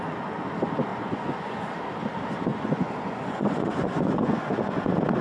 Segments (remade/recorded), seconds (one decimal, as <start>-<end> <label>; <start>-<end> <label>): 0.0-0.9 recorded; 0.9-1.7 remade; 1.7-2.5 recorded; 2.5-4.8 remade; 4.8-5.2 recorded